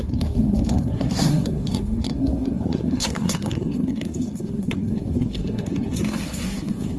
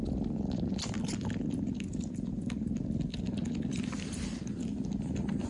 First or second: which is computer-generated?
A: first